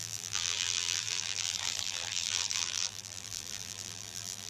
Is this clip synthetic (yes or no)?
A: yes